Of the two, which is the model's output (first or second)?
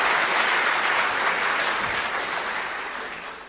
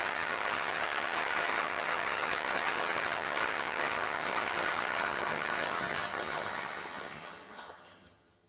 second